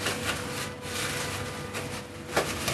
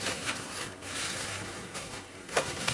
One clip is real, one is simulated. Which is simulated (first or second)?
second